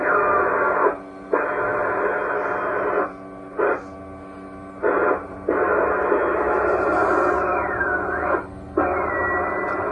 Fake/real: real